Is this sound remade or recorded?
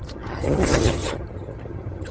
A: remade